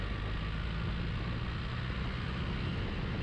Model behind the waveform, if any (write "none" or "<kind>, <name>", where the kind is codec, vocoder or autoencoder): none